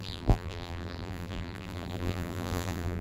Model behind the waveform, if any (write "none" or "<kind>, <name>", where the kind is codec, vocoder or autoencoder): vocoder, BigVGAN v2